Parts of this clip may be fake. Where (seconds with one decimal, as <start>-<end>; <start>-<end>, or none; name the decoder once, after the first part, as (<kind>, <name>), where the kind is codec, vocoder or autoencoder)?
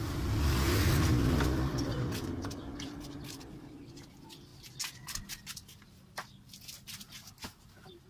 none